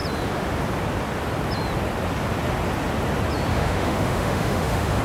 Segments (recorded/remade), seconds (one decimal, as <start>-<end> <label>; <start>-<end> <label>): 0.0-3.5 recorded; 3.5-5.0 remade

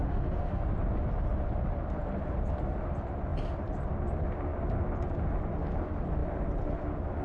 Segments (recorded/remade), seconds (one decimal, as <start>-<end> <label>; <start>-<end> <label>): 0.0-0.6 remade; 0.6-7.2 recorded

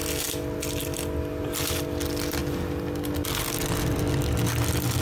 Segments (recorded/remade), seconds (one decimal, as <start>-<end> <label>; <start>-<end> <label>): 0.0-5.0 recorded

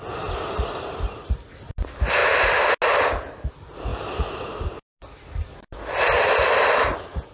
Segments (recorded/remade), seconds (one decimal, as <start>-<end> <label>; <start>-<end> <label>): 0.0-7.3 recorded

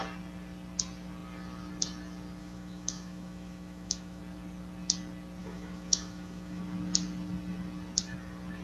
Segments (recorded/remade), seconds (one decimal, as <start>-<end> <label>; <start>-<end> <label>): 0.0-2.4 recorded; 2.4-4.2 remade; 4.2-5.4 recorded; 5.4-6.6 remade; 6.6-8.6 recorded